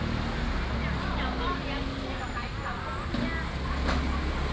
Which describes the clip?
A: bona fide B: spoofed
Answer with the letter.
A